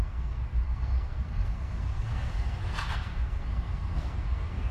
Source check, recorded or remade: remade